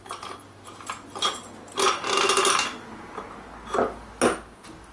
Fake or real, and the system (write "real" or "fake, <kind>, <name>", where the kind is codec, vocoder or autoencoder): real